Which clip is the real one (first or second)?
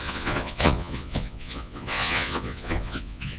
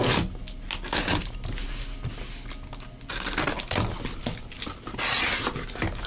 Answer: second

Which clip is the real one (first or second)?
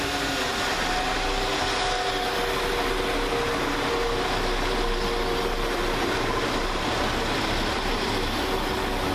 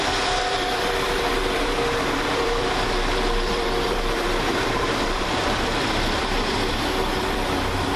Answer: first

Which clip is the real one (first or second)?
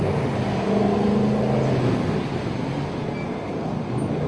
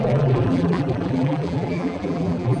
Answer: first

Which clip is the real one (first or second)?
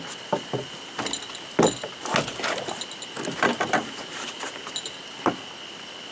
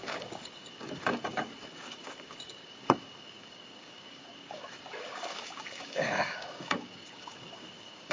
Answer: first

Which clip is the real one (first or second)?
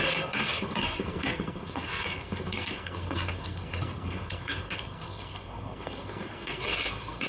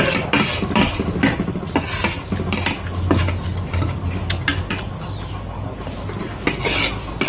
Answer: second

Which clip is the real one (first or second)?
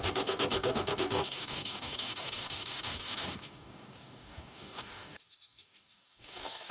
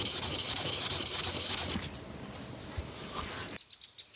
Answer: second